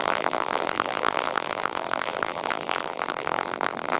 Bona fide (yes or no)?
no